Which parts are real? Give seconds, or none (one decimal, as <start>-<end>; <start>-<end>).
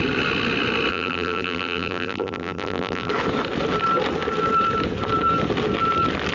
0.0-0.9; 3.1-6.3